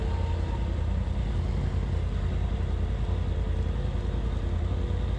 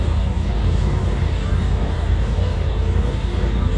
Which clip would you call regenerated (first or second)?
second